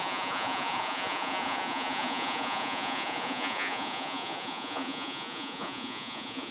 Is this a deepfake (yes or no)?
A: yes